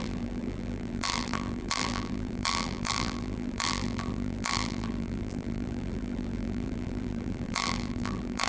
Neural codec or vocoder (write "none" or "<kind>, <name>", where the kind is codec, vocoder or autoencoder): vocoder, BigVGAN v2